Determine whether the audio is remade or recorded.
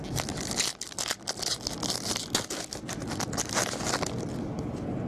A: recorded